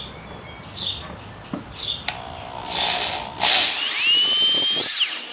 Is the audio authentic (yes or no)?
yes